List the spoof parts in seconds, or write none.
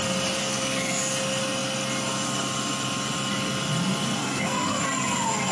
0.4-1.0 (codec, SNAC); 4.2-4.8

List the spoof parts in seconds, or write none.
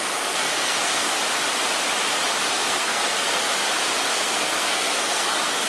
0.0-1.1 (codec, SNAC); 2.5-3.4; 4.1-5.7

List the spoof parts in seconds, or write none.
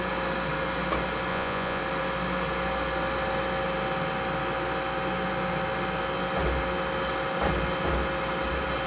1.3-1.8 (vocoder, Vocos)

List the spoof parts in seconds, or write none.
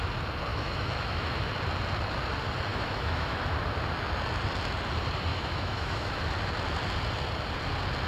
0.5-1.4 (autoencoder, DAC-VAE); 2.7-3.4; 5.3-6.2